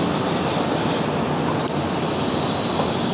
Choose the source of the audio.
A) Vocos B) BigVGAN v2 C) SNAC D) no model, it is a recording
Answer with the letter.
D